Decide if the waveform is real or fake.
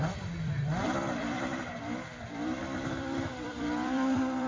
fake